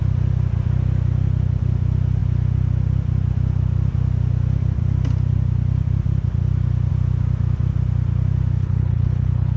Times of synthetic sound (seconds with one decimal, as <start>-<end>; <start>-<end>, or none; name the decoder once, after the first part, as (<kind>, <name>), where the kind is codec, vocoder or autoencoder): 8.6-9.6 (codec, HILCodec)